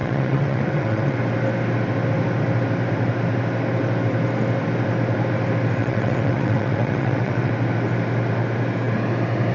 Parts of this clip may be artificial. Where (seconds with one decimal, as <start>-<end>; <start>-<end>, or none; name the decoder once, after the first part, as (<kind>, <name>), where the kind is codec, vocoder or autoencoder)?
0.0-1.2 (vocoder, WaveNeXt); 5.8-7.5